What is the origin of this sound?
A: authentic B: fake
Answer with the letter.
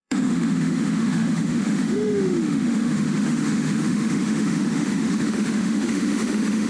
B